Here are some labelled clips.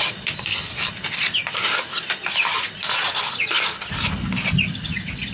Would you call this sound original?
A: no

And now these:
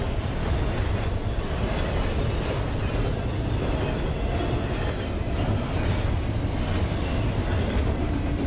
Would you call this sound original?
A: yes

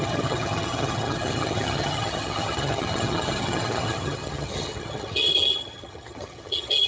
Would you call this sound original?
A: no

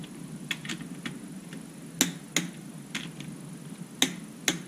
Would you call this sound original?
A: yes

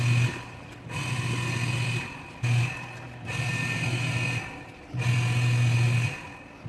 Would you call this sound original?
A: yes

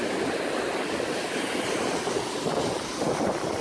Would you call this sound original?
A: yes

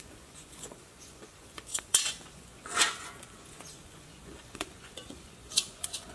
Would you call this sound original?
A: no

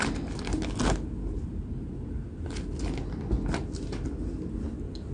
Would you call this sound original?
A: yes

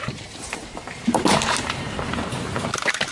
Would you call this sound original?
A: no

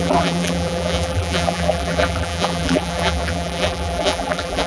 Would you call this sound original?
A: no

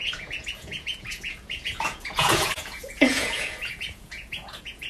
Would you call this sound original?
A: no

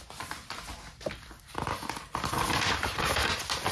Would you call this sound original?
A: yes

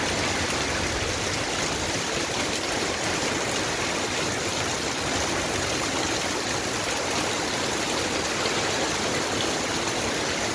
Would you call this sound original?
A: yes